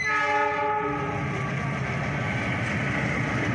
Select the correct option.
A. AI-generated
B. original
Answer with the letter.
B